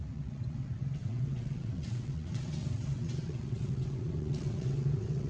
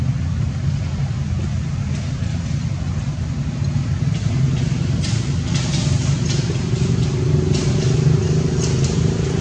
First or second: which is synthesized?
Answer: first